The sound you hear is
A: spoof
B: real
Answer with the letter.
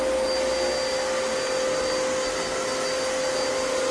B